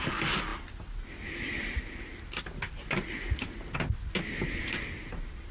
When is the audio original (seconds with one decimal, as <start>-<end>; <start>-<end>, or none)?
0.0-5.5